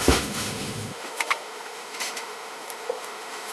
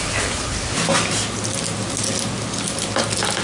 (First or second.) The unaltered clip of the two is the second